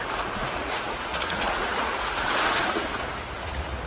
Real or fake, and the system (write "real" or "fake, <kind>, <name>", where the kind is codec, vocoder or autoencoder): fake, vocoder, Vocos